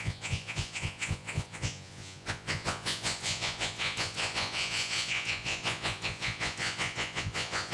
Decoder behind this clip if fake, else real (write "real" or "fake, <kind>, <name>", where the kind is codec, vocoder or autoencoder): fake, vocoder, Vocos